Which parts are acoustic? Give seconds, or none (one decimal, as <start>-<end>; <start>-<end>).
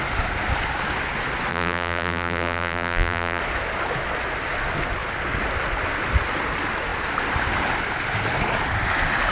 0.0-1.5; 3.4-9.3